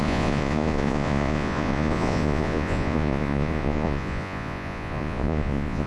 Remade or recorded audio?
remade